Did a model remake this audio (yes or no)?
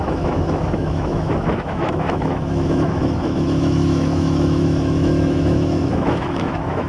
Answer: yes